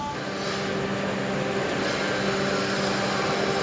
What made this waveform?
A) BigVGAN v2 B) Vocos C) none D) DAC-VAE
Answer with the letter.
C